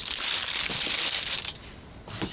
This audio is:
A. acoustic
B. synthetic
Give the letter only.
A